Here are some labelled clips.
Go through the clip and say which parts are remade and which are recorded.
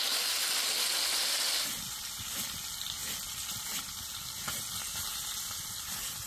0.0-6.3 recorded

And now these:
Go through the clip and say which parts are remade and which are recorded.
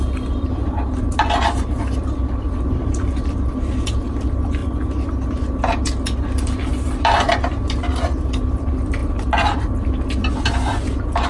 0.0-11.3 recorded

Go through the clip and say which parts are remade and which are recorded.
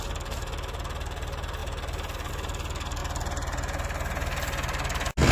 0.0-5.3 recorded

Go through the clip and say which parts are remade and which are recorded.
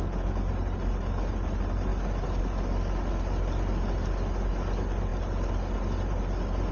0.0-6.7 recorded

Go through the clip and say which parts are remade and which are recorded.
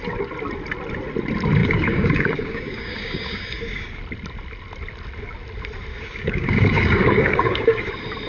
0.0-1.6 recorded; 1.6-4.0 remade; 4.0-5.9 recorded; 5.9-7.9 remade; 7.9-8.3 recorded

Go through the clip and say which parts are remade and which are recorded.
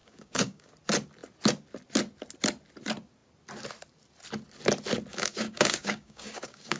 0.0-0.7 remade; 0.7-5.1 recorded; 5.1-6.8 remade